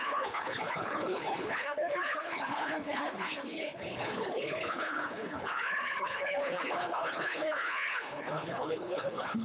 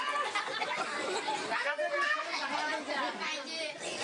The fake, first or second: first